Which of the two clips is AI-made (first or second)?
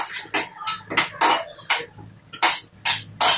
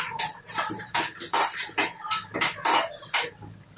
second